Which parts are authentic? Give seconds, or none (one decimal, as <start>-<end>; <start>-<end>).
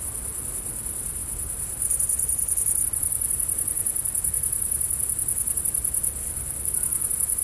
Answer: 1.2-5.6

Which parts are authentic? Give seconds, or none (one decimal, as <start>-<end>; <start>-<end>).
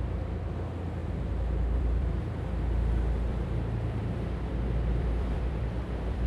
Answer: 0.0-1.0; 2.2-3.3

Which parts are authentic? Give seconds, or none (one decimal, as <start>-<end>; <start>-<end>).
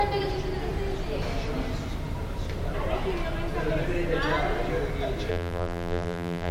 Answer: 0.0-5.3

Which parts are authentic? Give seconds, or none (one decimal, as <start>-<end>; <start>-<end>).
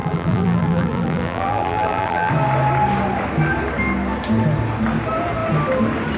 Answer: 2.3-6.2